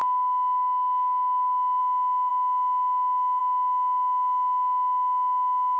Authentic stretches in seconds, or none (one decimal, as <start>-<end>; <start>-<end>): 1.8-5.8